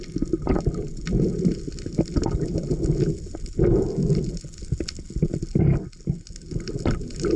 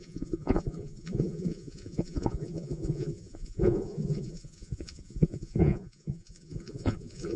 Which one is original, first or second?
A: first